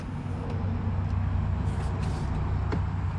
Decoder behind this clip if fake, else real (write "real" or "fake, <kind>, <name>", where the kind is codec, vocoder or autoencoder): real